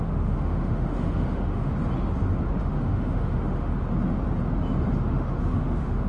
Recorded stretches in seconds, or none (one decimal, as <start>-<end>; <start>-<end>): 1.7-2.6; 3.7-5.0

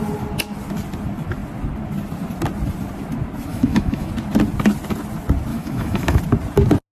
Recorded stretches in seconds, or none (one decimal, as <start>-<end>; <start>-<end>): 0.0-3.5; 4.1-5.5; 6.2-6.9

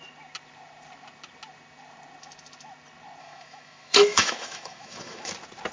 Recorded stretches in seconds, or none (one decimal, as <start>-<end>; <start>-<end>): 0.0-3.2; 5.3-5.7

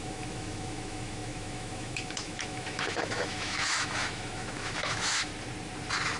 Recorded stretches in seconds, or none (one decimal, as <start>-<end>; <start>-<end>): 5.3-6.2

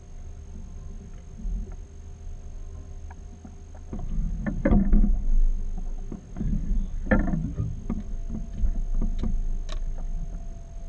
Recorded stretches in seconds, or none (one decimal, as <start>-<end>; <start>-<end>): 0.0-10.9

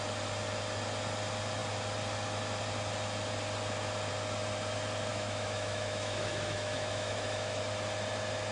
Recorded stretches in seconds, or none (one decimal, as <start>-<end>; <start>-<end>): 0.0-5.1; 7.6-8.5

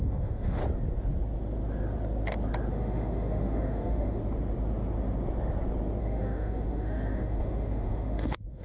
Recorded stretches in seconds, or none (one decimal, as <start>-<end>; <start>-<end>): 0.6-2.7; 4.2-6.0